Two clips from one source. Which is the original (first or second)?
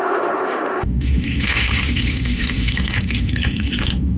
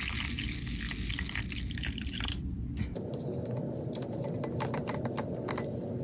second